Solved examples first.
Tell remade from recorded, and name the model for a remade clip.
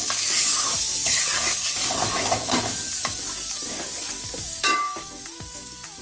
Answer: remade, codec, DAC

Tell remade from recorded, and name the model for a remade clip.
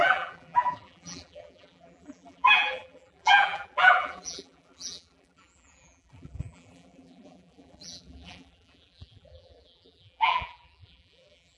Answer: remade, vocoder, BigVGAN v2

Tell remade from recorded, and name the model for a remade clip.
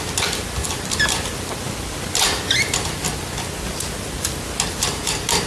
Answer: recorded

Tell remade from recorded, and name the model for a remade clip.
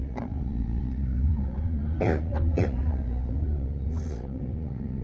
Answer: remade, vocoder, Vocos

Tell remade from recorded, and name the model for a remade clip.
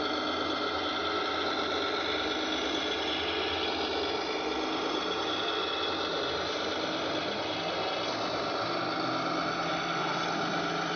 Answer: recorded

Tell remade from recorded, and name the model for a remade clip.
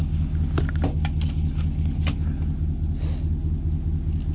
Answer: recorded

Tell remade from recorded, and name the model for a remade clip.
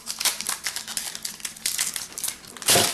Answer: recorded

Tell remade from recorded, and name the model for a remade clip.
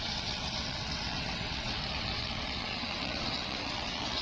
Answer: remade, vocoder, WaveNeXt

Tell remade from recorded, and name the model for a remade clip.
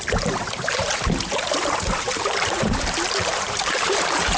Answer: remade, vocoder, BigVGAN v2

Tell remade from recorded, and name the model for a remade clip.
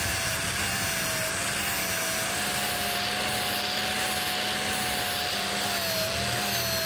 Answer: recorded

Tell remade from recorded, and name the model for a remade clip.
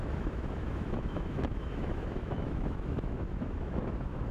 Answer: remade, autoencoder, DAC-VAE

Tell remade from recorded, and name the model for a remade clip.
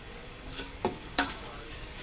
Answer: remade, codec, DAC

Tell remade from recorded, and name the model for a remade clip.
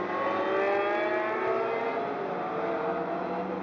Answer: recorded